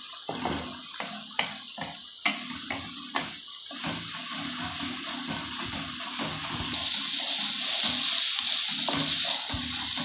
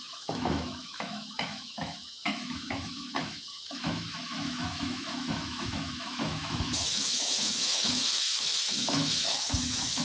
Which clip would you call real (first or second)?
first